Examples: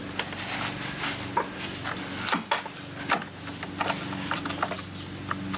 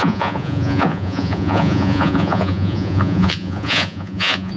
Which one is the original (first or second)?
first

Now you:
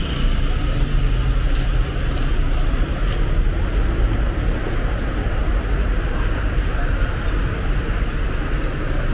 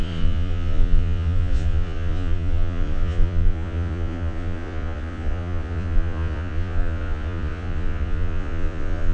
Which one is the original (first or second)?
first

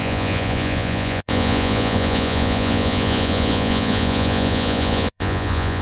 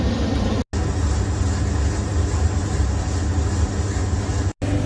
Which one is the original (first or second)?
second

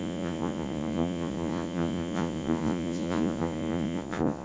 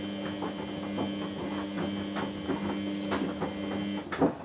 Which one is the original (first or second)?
second